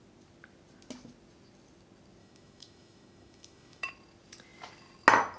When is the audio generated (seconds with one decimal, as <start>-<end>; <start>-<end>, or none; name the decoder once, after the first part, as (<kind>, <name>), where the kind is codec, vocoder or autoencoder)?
2.2-3.9 (autoencoder, DAC-VAE)